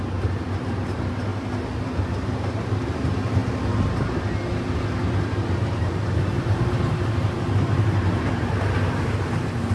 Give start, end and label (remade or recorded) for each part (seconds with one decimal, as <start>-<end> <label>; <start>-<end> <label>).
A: 0.0-1.3 remade; 1.3-2.1 recorded; 2.1-3.4 remade; 3.4-5.2 recorded; 5.2-9.7 remade